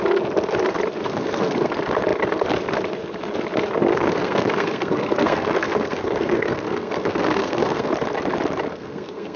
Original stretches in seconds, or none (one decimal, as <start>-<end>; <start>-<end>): 0.0-1.0; 1.7-3.9; 7.9-8.7